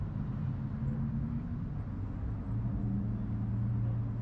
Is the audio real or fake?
real